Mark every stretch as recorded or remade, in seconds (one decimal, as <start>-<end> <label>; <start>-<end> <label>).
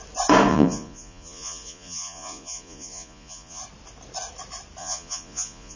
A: 0.0-0.5 recorded; 0.5-3.6 remade; 3.6-4.8 recorded; 4.8-5.8 remade